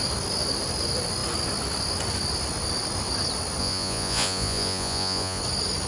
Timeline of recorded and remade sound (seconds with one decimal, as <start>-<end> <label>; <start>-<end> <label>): 0.0-3.6 recorded; 3.6-5.4 remade; 5.4-5.9 recorded

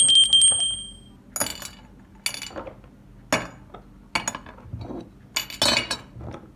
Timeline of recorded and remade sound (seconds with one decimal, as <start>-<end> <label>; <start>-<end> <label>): 0.0-6.6 recorded

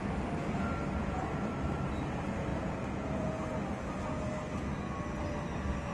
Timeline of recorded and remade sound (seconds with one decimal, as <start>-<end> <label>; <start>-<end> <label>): 0.0-1.0 recorded; 1.0-1.5 remade; 1.5-2.5 recorded; 2.5-3.4 remade; 3.4-5.9 recorded

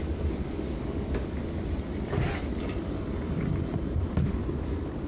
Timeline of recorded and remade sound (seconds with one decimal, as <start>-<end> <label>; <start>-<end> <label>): 0.0-1.4 remade; 1.4-4.2 recorded; 4.2-5.1 remade

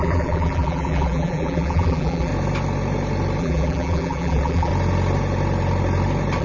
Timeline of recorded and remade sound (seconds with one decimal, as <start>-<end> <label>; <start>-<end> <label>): 0.0-2.3 remade; 2.3-3.4 recorded; 3.4-4.7 remade; 4.7-6.4 recorded